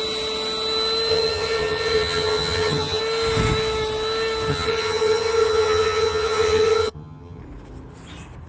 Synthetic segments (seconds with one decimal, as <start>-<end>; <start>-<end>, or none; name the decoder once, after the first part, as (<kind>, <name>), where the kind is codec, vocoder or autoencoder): 1.1-3.0 (vocoder, HiFi-GAN); 4.5-7.4